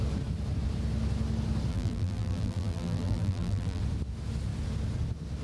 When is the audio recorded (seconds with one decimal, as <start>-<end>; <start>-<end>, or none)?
0.0-1.7; 3.8-5.4